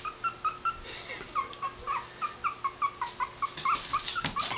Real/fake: real